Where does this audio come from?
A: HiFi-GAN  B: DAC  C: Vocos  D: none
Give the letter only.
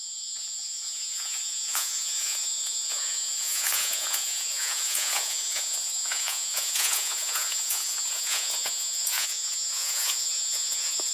C